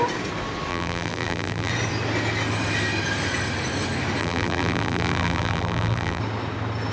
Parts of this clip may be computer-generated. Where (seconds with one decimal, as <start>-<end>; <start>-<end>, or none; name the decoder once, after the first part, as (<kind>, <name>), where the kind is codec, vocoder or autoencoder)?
0.7-1.7 (vocoder, BigVGAN v2); 4.2-6.2